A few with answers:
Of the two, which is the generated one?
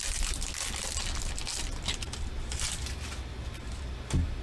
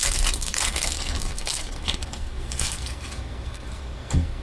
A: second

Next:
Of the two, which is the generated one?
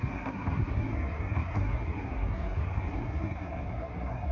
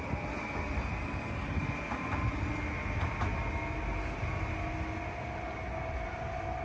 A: first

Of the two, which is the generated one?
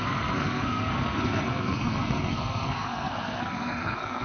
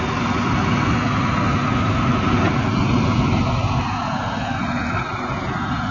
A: first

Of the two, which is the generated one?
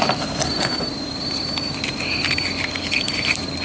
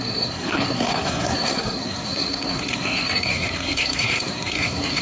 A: second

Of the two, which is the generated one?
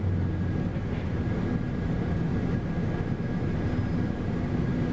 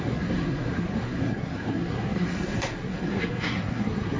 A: second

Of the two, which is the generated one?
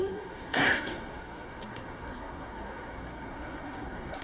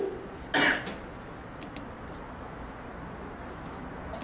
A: first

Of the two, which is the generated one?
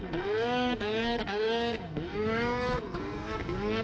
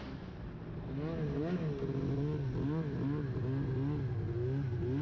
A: first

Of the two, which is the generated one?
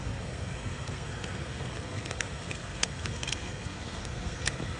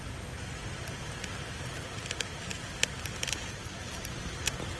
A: first